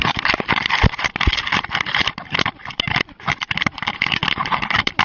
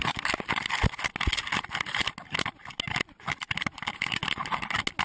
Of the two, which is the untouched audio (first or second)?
second